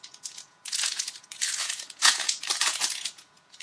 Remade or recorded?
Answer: remade